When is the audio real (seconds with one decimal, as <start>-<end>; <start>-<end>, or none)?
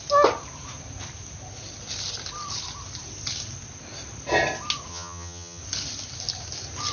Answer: 0.0-4.9; 5.6-6.9